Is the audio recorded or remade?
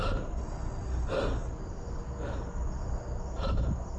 recorded